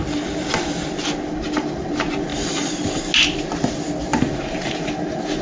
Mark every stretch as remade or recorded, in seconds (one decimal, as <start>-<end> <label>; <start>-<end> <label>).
0.0-1.3 recorded; 1.3-1.9 remade; 1.9-2.3 recorded; 2.3-3.0 remade; 3.0-4.1 recorded; 4.1-5.4 remade

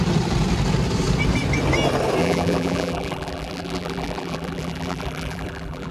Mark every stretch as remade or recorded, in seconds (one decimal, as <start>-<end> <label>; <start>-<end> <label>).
0.0-2.2 recorded; 2.2-5.9 remade

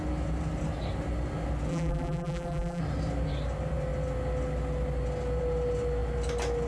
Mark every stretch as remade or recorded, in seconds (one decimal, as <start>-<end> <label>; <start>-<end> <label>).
0.0-1.7 recorded; 1.7-2.8 remade; 2.8-6.7 recorded

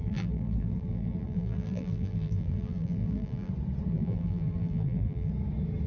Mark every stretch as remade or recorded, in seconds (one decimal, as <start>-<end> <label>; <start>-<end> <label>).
0.0-3.5 remade; 3.5-3.9 recorded; 3.9-5.3 remade; 5.3-5.9 recorded

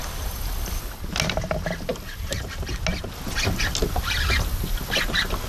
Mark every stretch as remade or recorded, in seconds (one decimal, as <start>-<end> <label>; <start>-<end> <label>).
0.0-0.8 remade; 0.8-5.5 recorded

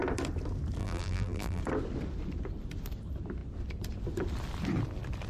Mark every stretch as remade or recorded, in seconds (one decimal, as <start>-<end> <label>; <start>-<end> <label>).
0.0-0.8 recorded; 0.8-1.6 remade; 1.6-5.3 recorded

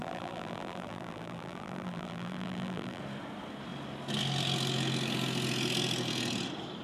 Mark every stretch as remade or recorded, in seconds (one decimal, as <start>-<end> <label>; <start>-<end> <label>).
0.0-3.0 remade; 3.0-6.8 recorded

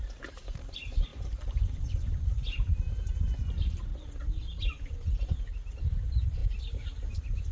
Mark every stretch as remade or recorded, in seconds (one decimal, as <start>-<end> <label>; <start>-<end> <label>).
0.0-3.9 remade; 3.9-5.7 recorded; 5.7-7.5 remade